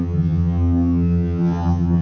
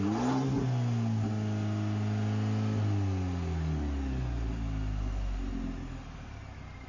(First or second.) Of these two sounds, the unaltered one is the second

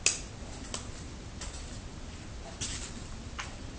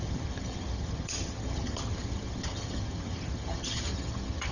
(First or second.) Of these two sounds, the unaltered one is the first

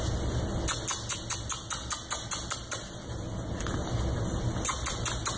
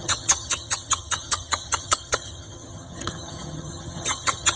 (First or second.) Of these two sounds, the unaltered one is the first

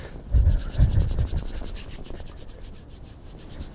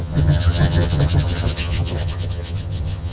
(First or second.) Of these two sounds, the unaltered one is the first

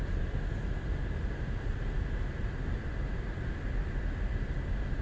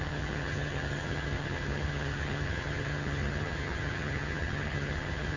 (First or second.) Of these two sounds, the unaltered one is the first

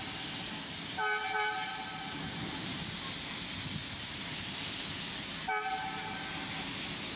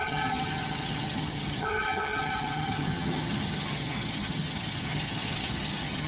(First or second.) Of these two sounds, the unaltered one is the first